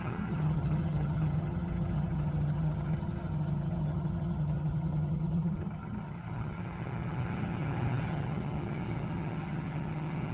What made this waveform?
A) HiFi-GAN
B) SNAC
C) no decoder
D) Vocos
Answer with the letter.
A